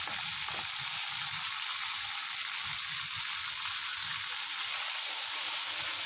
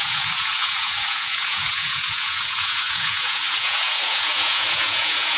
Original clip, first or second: first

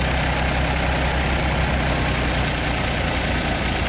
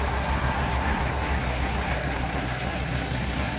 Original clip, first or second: first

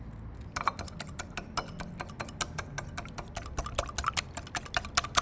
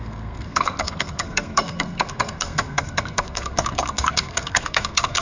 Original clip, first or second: first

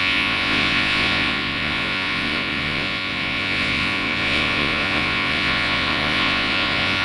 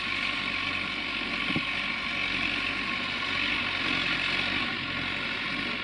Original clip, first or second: second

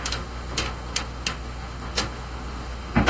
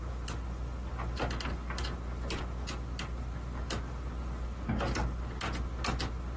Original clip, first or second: second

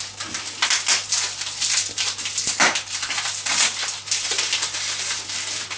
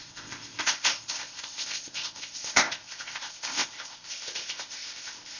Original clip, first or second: first